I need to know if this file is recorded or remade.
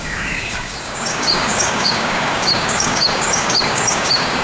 remade